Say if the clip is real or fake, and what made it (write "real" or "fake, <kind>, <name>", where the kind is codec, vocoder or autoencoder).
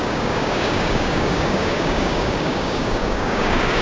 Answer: fake, codec, DAC